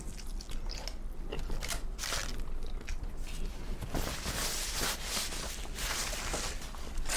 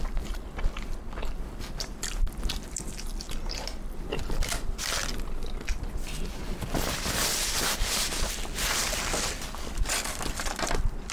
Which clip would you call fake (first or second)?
second